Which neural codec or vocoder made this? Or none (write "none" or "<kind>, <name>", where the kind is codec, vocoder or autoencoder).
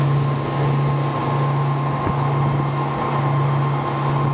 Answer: none